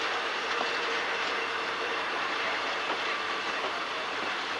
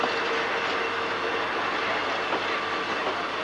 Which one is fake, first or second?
first